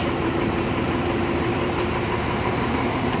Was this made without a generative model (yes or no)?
no